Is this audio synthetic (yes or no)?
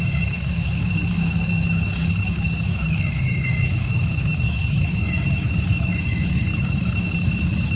yes